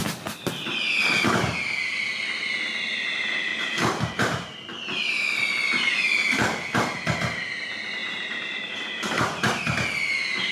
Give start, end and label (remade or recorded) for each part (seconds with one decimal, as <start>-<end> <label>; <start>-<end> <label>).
0.0-3.5 recorded; 3.5-5.4 remade; 5.4-8.0 recorded; 8.0-9.6 remade; 9.6-10.5 recorded